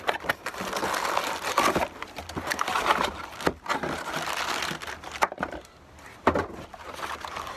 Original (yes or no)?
yes